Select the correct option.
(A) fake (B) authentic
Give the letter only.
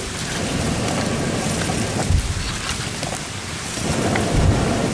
B